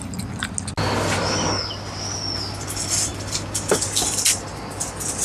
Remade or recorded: recorded